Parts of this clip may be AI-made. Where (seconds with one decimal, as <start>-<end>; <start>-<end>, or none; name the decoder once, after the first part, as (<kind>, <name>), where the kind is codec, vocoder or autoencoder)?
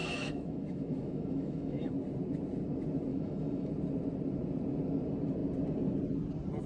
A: 0.0-1.9 (autoencoder, DAC-VAE); 3.1-3.7